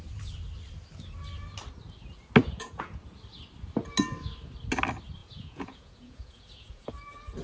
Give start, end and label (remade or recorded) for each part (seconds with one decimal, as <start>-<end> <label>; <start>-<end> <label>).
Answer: 0.0-2.4 recorded; 2.4-3.0 remade; 3.0-5.2 recorded; 5.2-6.9 remade; 6.9-7.4 recorded